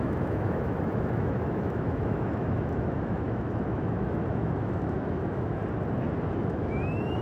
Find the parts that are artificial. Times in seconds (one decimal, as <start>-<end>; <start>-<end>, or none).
0.0-5.6; 6.3-7.2